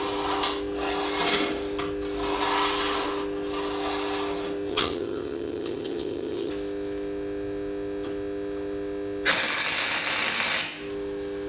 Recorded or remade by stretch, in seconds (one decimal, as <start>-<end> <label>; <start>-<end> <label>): 0.0-4.7 recorded; 4.7-6.5 remade; 6.5-11.5 recorded